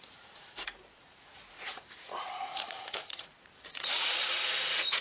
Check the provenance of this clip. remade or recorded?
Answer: remade